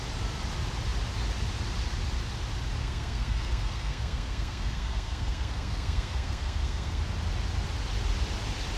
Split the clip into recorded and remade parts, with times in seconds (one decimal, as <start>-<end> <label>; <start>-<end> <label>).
0.0-2.8 recorded; 2.8-7.0 remade; 7.0-8.8 recorded